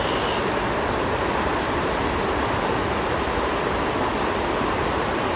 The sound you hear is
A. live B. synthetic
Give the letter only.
A